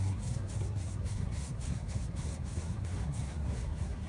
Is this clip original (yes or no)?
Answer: no